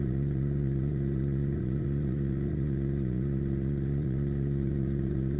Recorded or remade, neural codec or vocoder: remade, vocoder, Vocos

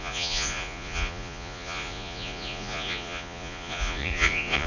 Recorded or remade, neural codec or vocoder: remade, vocoder, Vocos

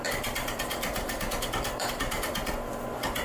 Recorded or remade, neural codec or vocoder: remade, vocoder, BigVGAN v2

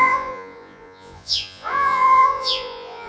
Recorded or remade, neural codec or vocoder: remade, vocoder, Vocos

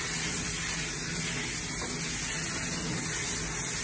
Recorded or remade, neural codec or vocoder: recorded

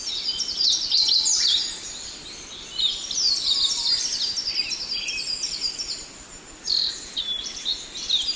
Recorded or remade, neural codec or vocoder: recorded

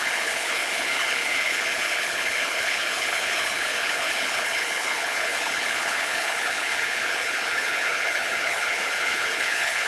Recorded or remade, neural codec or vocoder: remade, codec, HILCodec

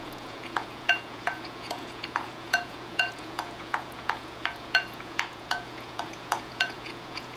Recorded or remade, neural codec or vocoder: remade, vocoder, Vocos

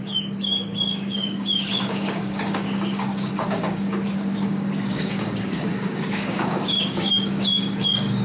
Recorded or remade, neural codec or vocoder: remade, codec, DAC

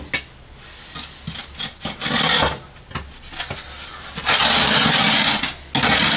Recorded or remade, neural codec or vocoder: recorded